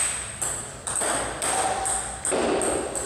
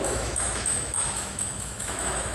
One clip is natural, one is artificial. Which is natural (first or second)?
first